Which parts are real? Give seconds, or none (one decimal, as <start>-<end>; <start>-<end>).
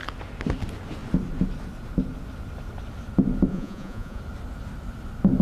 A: 0.0-3.5; 4.2-5.4